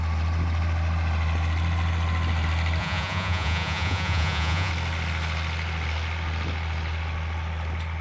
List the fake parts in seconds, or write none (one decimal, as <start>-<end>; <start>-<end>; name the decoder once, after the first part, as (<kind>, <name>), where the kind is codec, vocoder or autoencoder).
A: 2.8-4.7 (vocoder, Vocos)